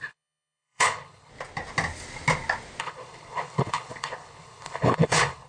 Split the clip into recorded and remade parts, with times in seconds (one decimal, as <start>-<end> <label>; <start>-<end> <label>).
0.0-1.3 remade; 1.3-2.8 recorded; 2.8-5.5 remade

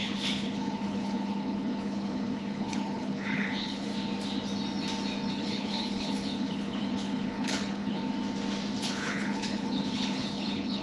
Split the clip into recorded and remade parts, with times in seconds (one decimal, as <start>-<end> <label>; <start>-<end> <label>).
0.0-3.9 remade; 3.9-5.3 recorded; 5.3-8.0 remade; 8.0-8.8 recorded; 8.8-10.8 remade